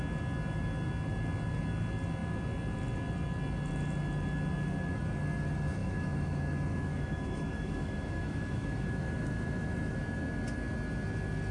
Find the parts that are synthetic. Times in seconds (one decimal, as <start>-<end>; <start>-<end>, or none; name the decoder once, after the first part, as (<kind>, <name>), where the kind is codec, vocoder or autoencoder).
5.8-10.0 (autoencoder, DAC-VAE)

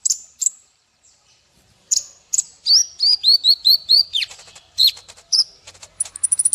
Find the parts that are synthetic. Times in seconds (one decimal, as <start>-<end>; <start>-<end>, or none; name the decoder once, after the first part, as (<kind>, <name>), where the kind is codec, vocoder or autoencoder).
0.0-2.5 (vocoder, BigVGAN v2); 3.1-6.5

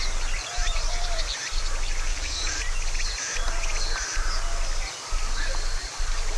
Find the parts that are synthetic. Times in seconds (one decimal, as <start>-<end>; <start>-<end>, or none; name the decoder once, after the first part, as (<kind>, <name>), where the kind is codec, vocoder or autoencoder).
2.1-2.6 (codec, DAC)

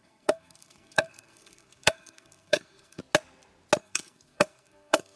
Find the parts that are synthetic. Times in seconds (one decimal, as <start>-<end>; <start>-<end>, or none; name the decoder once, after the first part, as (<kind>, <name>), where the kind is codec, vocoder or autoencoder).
0.0-3.0 (codec, SNAC); 3.8-5.2

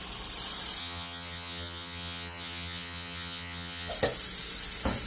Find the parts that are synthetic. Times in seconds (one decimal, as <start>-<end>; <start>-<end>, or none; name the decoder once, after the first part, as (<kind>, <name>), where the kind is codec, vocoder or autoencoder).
0.8-3.9 (vocoder, HiFi-GAN)

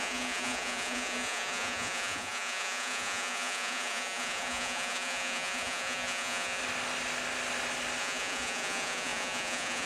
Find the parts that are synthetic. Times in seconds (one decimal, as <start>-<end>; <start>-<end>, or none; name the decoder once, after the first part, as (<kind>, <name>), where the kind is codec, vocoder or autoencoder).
0.0-6.6 (vocoder, Vocos); 8.0-9.9

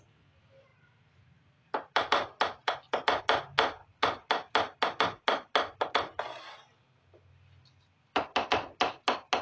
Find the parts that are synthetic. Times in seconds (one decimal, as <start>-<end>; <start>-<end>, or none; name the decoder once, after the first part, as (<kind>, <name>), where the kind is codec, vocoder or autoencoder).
0.7-3.2 (vocoder, BigVGAN v2); 3.8-4.5